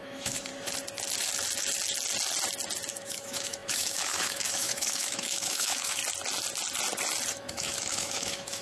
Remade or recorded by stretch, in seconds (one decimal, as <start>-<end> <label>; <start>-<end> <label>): 0.0-0.5 remade; 0.5-2.9 recorded; 2.9-6.0 remade; 6.0-7.3 recorded; 7.3-8.6 remade